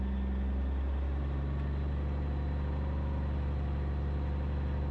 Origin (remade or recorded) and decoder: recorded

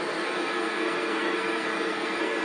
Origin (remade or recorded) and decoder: remade, codec, SNAC